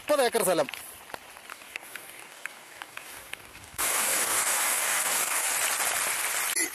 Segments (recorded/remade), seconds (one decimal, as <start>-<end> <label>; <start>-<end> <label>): 0.0-1.5 recorded; 1.5-5.5 remade; 5.5-6.7 recorded